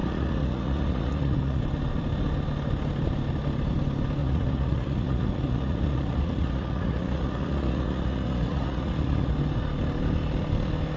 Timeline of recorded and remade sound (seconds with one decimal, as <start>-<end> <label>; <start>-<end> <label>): 0.0-1.6 remade; 1.6-4.2 recorded; 4.2-9.3 remade; 9.3-11.0 recorded